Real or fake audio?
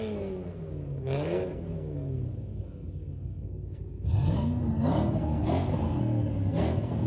fake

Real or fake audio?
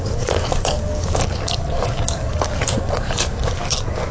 fake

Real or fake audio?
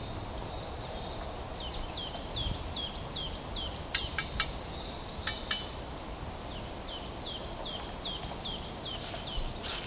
real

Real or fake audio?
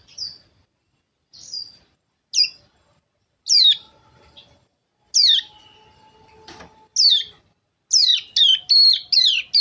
real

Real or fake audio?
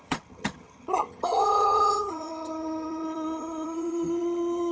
fake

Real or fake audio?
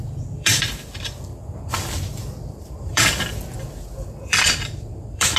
fake